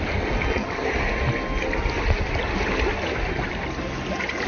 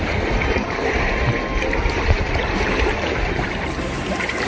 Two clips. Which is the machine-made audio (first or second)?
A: second